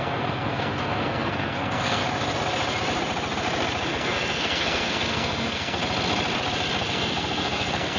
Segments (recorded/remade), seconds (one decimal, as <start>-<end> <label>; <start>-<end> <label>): 0.0-2.0 remade; 2.0-3.9 recorded; 3.9-5.8 remade; 5.8-6.8 recorded; 6.8-8.0 remade